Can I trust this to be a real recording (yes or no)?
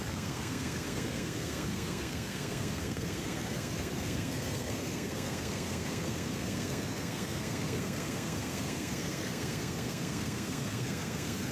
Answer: no